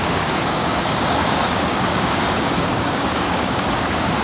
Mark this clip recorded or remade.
remade